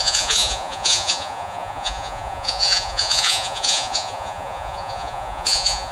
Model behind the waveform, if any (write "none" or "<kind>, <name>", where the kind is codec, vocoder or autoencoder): vocoder, Vocos